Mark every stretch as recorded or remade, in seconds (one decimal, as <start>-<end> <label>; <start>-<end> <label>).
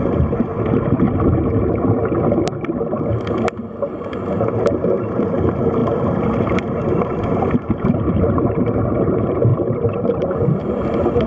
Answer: 0.0-0.5 remade; 0.5-3.6 recorded; 3.6-11.3 remade